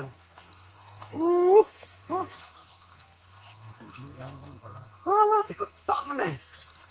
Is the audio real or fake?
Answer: fake